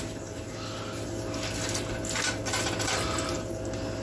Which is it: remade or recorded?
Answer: recorded